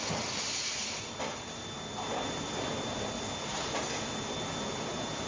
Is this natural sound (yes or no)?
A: yes